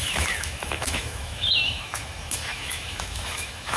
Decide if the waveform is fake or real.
fake